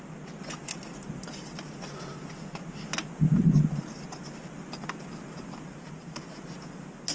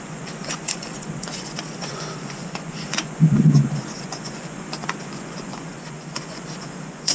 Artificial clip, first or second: second